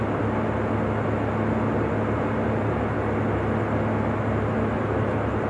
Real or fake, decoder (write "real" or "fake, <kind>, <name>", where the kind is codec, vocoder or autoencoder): real